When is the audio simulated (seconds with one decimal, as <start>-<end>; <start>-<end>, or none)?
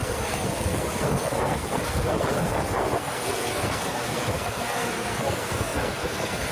0.0-6.5